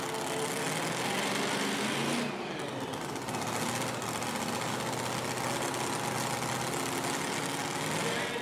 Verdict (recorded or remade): recorded